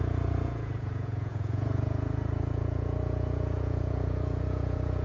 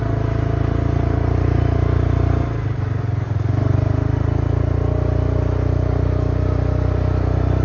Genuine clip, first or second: second